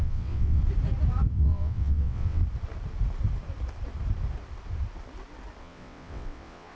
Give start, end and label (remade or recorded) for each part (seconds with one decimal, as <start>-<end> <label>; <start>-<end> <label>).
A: 0.0-0.6 remade; 0.6-1.3 recorded; 1.3-2.4 remade; 2.4-5.6 recorded; 5.6-6.7 remade

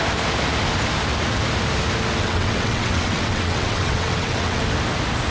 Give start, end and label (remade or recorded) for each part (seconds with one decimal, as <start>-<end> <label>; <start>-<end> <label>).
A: 0.0-2.2 recorded; 2.2-4.6 remade; 4.6-5.3 recorded